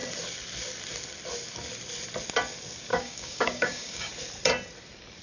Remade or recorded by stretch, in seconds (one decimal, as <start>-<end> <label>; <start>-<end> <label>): 0.0-2.9 recorded; 2.9-4.1 remade; 4.1-5.2 recorded